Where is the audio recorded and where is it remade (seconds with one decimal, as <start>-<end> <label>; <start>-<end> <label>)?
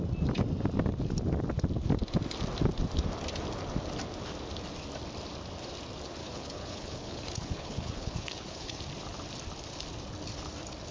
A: 0.0-6.2 recorded; 6.2-8.8 remade; 8.8-10.9 recorded